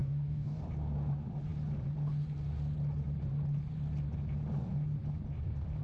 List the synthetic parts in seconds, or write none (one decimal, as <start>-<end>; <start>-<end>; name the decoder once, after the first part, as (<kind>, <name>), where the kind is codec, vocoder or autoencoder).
0.0-0.6 (codec, DAC)